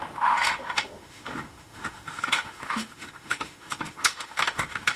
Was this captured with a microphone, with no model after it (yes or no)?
no